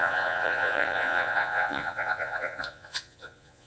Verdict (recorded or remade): remade